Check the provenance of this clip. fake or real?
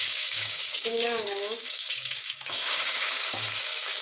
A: fake